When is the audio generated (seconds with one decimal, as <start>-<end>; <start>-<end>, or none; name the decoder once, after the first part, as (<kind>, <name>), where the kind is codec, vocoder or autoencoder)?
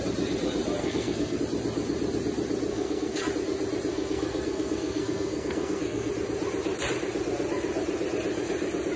0.8-1.4 (codec, SNAC); 2.7-3.3; 3.9-6.1